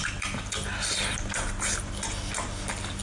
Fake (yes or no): no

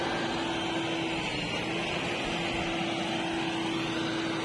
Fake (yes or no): no